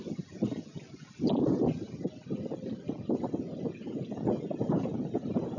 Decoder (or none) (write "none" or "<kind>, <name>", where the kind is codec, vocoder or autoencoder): none